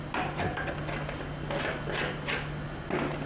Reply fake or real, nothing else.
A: real